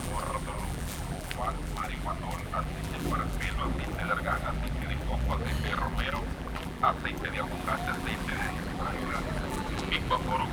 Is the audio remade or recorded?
remade